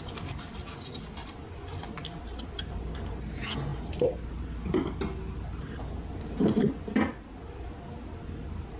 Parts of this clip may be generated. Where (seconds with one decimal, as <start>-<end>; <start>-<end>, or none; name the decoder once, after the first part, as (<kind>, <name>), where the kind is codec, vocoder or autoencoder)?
none